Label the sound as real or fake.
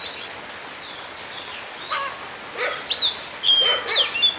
real